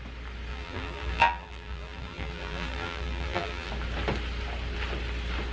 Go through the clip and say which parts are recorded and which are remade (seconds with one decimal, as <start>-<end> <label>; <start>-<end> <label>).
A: 0.0-0.5 recorded; 0.5-3.7 remade; 3.7-5.5 recorded